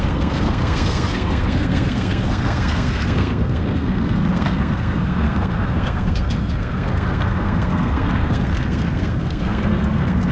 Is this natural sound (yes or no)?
no